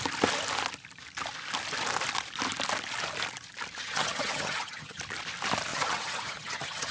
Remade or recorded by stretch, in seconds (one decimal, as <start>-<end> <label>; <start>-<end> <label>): 0.0-3.8 recorded; 3.8-5.0 remade; 5.0-5.7 recorded; 5.7-6.9 remade